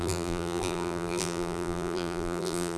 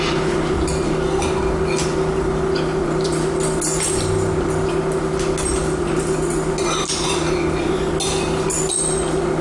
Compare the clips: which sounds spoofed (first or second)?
first